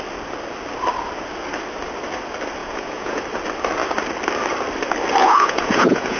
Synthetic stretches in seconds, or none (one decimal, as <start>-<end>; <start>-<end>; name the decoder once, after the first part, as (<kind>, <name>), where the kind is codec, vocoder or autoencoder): 2.6-3.2 (vocoder, Vocos); 5.2-6.2